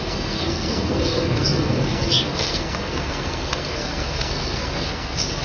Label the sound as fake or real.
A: fake